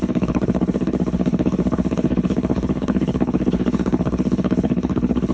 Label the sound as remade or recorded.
remade